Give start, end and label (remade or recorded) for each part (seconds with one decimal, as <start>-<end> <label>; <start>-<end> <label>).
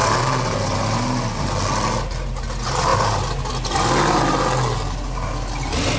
0.0-6.0 recorded